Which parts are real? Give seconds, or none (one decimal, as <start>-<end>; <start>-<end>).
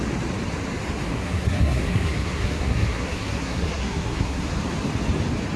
0.0-1.1; 4.5-5.6